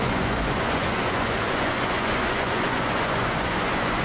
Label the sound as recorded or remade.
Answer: remade